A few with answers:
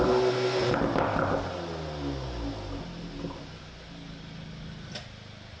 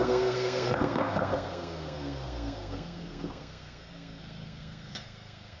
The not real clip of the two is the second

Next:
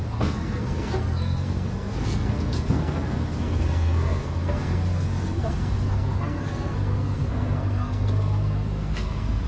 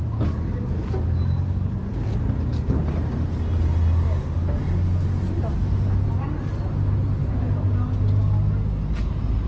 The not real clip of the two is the first